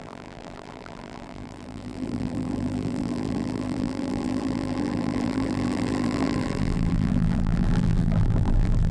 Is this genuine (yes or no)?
no